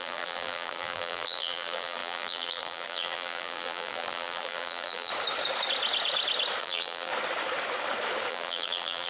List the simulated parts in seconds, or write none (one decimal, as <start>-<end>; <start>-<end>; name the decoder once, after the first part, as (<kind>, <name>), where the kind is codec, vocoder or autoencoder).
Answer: 0.0-5.1 (vocoder, BigVGAN v2); 6.6-7.1; 8.3-9.1